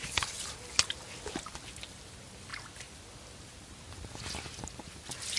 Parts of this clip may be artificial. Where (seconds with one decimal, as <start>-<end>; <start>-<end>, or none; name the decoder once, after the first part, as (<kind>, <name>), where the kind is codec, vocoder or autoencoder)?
none